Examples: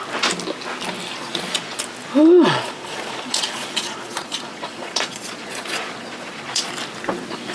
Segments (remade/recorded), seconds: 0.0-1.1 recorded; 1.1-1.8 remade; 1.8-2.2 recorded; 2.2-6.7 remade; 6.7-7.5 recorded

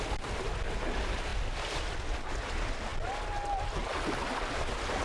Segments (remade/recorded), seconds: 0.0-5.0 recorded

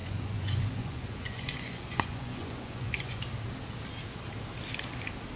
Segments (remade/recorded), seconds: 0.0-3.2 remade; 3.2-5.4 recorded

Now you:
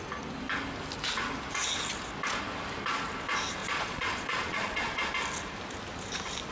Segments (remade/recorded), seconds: 0.0-3.6 recorded; 3.6-5.1 remade; 5.1-6.5 recorded

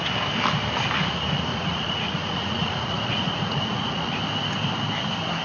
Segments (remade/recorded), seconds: 0.0-1.5 recorded; 1.5-4.1 remade; 4.1-5.4 recorded